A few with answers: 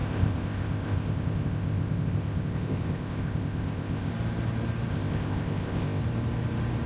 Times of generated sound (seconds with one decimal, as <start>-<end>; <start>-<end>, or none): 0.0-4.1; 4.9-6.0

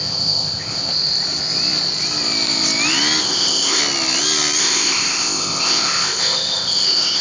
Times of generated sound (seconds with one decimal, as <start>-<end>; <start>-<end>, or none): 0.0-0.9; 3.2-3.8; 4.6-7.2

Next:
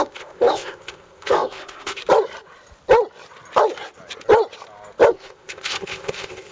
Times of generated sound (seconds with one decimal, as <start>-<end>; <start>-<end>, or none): 0.0-2.0; 5.1-6.5